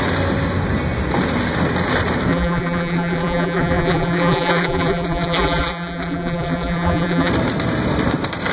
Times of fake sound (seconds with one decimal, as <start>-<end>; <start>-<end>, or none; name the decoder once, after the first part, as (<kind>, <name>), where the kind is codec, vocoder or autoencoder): 2.3-7.3 (vocoder, BigVGAN v2)